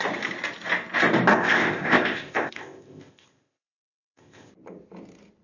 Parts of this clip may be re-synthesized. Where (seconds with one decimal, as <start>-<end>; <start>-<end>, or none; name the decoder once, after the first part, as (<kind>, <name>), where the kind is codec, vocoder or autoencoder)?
1.3-4.5 (codec, ZipCodec)